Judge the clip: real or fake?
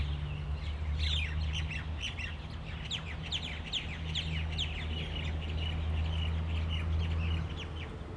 real